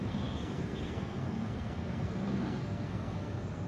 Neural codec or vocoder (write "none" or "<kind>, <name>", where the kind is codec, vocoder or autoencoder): codec, SNAC